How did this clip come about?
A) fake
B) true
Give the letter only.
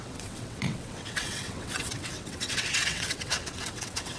A